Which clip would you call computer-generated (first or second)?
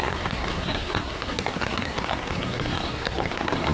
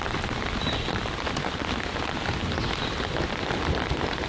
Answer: first